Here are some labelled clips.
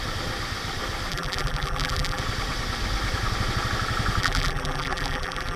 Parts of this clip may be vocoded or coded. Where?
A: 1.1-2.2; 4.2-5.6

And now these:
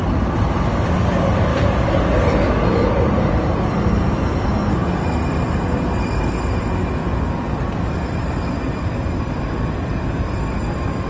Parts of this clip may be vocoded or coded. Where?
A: 7.0-8.6; 9.9-11.1